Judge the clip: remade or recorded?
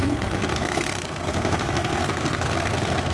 remade